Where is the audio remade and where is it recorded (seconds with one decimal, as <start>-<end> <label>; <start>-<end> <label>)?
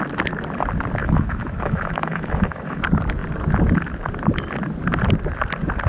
0.0-1.0 recorded; 1.0-2.8 remade; 2.8-5.9 recorded